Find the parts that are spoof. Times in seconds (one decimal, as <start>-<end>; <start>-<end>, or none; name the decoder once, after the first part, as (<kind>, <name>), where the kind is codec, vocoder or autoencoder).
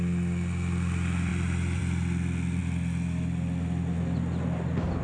none